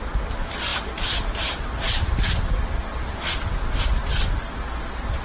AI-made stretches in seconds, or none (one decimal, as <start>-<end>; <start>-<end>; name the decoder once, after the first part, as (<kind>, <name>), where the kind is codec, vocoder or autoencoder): none

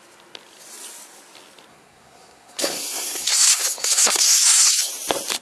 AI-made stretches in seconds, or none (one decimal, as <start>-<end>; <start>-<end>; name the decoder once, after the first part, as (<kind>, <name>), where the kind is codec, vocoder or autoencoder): 1.7-4.9 (codec, SNAC)

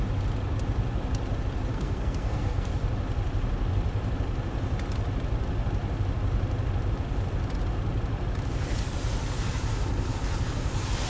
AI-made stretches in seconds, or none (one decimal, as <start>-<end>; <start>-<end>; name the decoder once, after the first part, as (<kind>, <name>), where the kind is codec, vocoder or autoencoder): 1.7-2.7 (codec, SNAC)

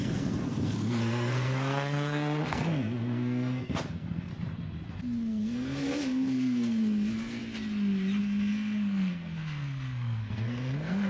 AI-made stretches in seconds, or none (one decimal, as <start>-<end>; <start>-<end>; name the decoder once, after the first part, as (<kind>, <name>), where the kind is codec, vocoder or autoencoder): 0.0-4.3 (codec, SNAC); 4.9-7.4; 8.2-11.1

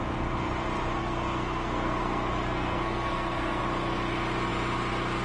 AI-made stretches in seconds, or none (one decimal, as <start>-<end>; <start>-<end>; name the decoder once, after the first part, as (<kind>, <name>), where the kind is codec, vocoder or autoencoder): 1.0-3.6 (codec, SNAC)

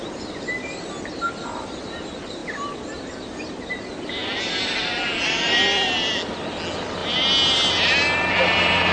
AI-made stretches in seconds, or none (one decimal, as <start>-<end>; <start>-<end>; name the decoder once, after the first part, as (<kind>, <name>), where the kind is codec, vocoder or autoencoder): none